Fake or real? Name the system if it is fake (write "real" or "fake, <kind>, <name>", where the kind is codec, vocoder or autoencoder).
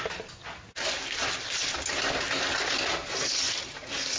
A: real